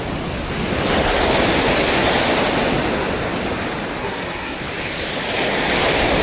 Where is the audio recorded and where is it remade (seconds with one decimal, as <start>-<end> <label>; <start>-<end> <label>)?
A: 0.0-4.0 recorded; 4.0-4.6 remade; 4.6-6.2 recorded